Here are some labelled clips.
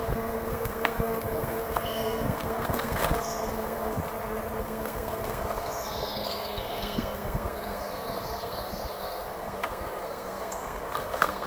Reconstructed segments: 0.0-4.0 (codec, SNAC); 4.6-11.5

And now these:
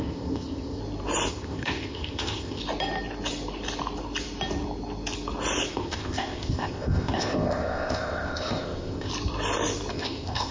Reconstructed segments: 0.0-0.8 (codec, ZipCodec); 1.3-2.6; 5.7-9.1; 9.9-10.5

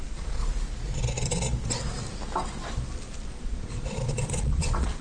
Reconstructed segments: 0.0-0.4 (vocoder, Vocos); 3.4-5.0

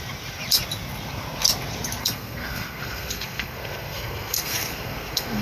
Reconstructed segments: 2.0-5.4 (codec, SNAC)

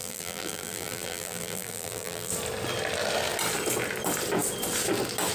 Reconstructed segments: 0.0-2.3 (vocoder, BigVGAN v2)

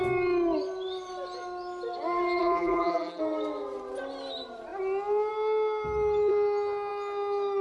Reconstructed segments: 2.4-3.2 (vocoder, BigVGAN v2)

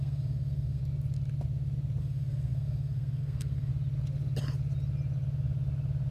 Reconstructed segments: 0.0-0.8 (codec, SNAC); 2.0-3.7

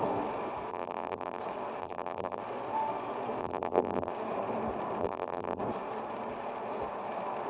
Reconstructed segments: 0.7-1.4 (vocoder, BigVGAN v2); 1.8-2.4; 3.4-4.1; 5.0-5.6